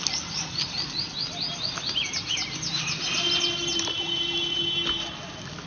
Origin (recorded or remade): recorded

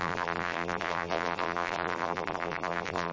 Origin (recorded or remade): remade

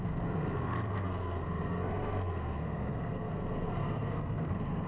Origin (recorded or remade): remade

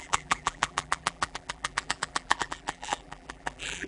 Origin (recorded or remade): remade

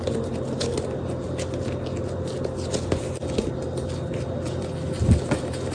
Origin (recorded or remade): recorded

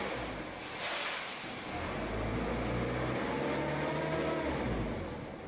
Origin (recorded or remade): recorded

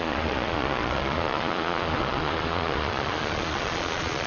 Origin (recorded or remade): remade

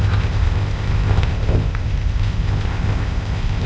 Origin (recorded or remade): remade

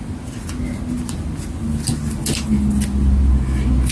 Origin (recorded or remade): recorded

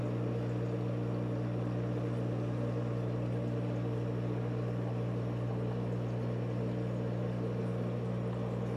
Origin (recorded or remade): recorded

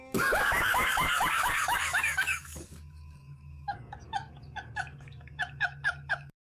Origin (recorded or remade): remade